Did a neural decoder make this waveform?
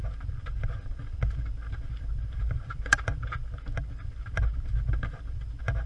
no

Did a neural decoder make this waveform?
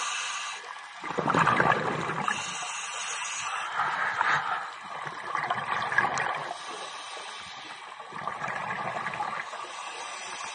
no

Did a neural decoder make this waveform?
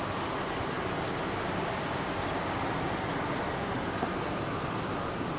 no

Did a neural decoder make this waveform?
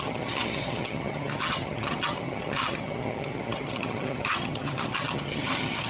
yes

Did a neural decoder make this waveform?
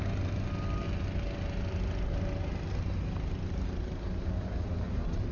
no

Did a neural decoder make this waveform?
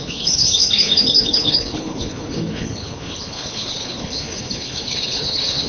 yes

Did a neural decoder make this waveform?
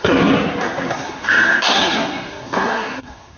yes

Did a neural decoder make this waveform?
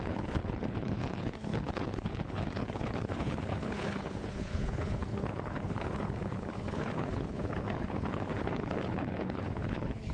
yes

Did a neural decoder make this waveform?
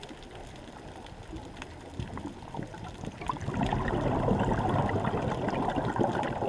no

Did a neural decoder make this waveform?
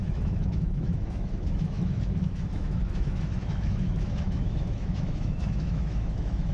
yes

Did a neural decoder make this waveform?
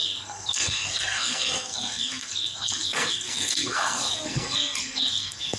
yes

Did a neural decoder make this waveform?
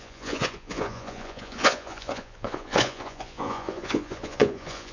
yes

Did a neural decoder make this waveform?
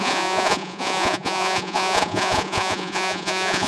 yes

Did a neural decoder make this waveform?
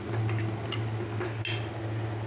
no